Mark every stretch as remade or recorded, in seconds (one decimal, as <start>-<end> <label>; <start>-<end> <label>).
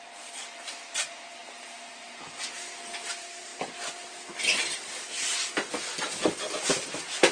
0.0-7.3 recorded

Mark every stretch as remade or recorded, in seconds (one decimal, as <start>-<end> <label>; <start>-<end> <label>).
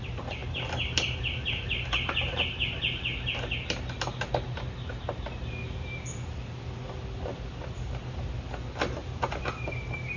0.0-9.0 recorded; 9.0-9.5 remade; 9.5-10.2 recorded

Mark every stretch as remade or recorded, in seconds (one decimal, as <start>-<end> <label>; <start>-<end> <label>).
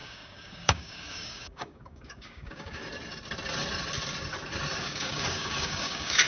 0.0-2.8 remade; 2.8-4.8 recorded; 4.8-6.3 remade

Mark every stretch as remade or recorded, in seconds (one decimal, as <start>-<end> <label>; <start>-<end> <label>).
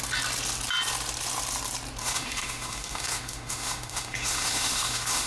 0.0-2.0 recorded; 2.0-5.3 remade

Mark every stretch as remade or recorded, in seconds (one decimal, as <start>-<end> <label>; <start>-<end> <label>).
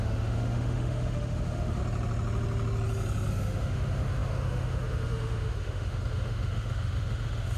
0.0-1.8 remade; 1.8-3.3 recorded; 3.3-7.6 remade